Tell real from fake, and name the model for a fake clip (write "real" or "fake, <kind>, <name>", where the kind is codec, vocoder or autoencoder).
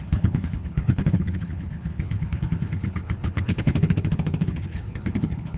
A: fake, codec, HILCodec